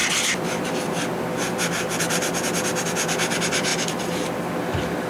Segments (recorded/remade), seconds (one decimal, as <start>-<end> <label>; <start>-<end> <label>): 0.0-5.1 recorded